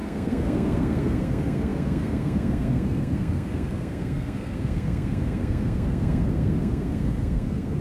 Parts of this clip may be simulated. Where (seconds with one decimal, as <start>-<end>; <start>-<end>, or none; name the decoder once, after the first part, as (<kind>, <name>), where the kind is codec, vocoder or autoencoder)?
0.0-7.8 (codec, SNAC)